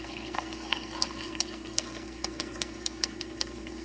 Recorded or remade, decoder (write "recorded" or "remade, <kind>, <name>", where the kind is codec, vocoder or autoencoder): remade, codec, SNAC